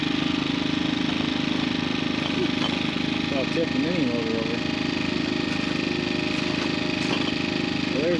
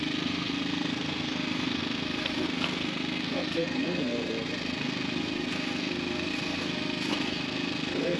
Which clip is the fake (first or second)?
second